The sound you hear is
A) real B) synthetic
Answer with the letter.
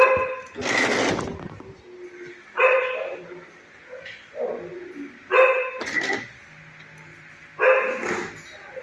A